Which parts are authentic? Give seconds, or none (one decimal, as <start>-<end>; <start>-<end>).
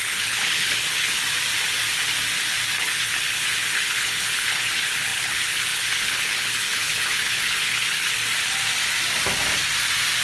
1.2-2.8; 8.2-10.2